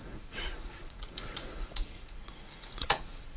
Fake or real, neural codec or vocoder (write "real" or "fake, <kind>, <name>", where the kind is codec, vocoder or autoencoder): fake, vocoder, Vocos